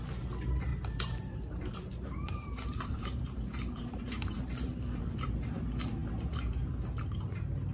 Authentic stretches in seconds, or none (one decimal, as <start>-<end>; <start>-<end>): 0.0-0.7; 5.3-7.7